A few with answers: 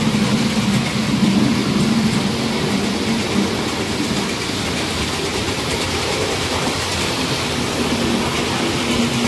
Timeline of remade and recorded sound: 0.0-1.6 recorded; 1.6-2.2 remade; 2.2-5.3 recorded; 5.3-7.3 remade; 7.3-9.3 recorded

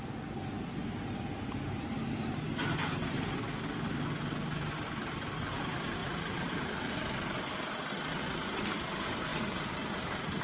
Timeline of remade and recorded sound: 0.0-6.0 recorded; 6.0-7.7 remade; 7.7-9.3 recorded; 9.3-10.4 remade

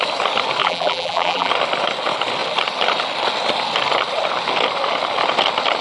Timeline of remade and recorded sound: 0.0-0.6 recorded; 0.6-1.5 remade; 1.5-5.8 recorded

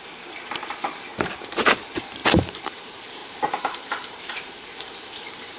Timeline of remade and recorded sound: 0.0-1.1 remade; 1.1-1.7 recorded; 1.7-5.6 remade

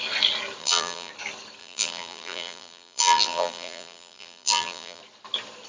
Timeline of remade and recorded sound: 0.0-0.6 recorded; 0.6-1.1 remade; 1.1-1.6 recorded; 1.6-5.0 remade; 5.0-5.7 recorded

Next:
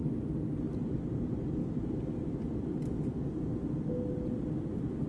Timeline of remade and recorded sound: 0.0-0.9 recorded; 0.9-1.6 remade; 1.6-2.7 recorded; 2.7-3.5 remade; 3.5-4.6 recorded; 4.6-5.1 remade